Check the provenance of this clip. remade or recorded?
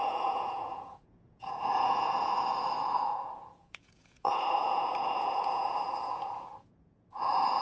remade